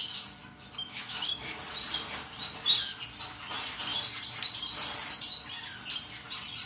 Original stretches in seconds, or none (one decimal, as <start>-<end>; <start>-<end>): 0.0-0.8; 1.6-6.7